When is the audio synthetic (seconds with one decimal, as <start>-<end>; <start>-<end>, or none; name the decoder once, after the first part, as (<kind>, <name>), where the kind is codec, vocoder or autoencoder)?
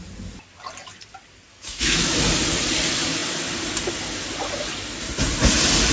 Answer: 1.5-2.0 (autoencoder, DAC-VAE)